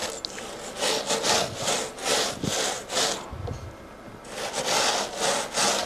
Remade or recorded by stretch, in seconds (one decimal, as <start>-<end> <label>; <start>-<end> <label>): 0.0-5.9 recorded